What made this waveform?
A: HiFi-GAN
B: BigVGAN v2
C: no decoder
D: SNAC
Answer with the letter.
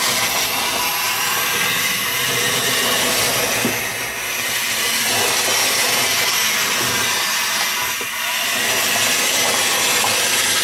C